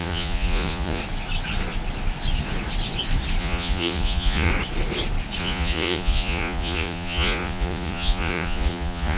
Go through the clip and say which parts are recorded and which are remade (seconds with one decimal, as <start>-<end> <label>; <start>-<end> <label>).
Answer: 0.0-1.0 remade; 1.0-3.4 recorded; 3.4-4.5 remade; 4.5-5.4 recorded; 5.4-9.2 remade

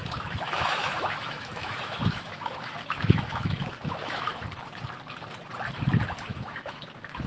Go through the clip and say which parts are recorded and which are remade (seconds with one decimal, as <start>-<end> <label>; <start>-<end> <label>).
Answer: 0.0-4.4 remade; 4.4-6.3 recorded; 6.3-7.3 remade

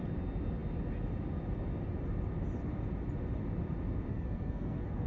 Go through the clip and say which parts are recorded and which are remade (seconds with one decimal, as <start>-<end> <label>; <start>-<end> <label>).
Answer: 0.0-4.1 recorded; 4.1-5.1 remade

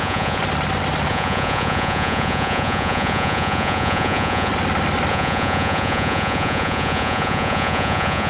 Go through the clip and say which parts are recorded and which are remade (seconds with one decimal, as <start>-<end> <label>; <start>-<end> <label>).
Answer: 0.0-0.4 remade; 0.4-1.1 recorded; 1.1-4.5 remade; 4.5-5.1 recorded; 5.1-8.3 remade